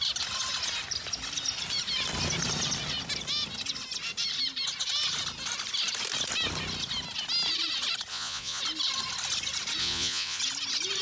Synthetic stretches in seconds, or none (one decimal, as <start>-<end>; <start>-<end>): 8.1-8.6; 9.8-10.4